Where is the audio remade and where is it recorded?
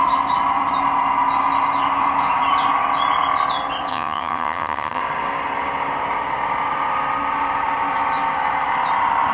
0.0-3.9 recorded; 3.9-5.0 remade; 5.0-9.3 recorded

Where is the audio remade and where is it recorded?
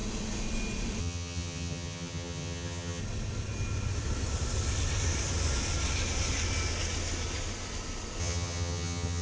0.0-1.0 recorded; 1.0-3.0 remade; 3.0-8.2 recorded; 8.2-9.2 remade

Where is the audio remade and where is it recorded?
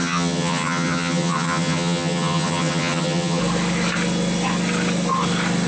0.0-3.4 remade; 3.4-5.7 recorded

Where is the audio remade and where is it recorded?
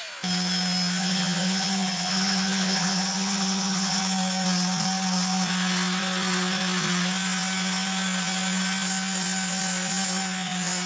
0.0-1.0 recorded; 1.0-4.0 remade; 4.0-10.9 recorded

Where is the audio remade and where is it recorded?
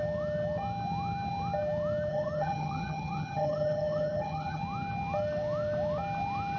0.0-2.1 recorded; 2.1-4.6 remade; 4.6-6.6 recorded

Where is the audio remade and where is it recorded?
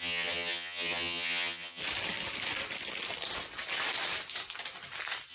0.0-1.8 remade; 1.8-5.3 recorded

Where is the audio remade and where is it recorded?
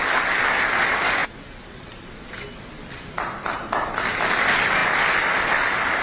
0.0-6.0 recorded